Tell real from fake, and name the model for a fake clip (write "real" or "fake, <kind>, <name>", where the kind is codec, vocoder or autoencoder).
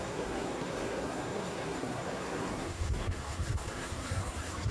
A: fake, codec, SNAC